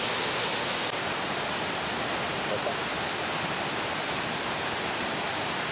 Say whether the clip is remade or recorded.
recorded